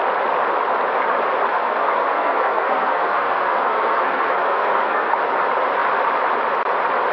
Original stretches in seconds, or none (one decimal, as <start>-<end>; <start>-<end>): 0.0-1.5; 5.1-7.1